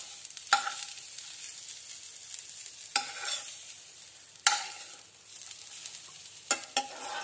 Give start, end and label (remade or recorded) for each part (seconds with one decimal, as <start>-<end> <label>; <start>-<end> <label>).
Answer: 0.0-7.2 recorded